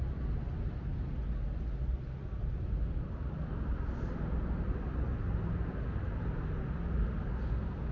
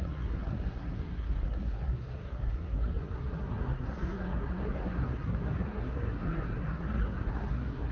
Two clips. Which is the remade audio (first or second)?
second